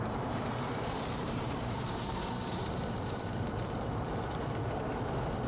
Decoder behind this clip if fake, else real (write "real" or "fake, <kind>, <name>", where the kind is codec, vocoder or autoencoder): fake, vocoder, BigVGAN v2